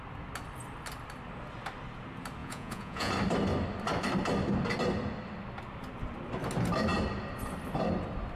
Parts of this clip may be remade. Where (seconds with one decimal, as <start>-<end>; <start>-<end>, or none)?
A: 2.4-3.1